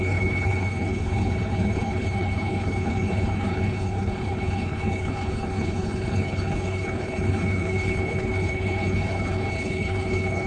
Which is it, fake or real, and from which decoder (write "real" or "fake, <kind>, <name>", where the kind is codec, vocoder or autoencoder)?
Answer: fake, codec, HILCodec